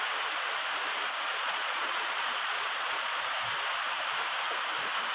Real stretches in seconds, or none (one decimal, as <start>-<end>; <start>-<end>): 0.0-1.3; 3.3-5.1